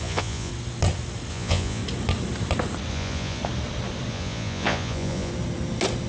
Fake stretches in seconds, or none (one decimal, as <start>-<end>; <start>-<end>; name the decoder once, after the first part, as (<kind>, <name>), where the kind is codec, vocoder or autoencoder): 0.0-0.5 (vocoder, Vocos); 1.3-1.8; 2.9-3.4; 4.1-5.3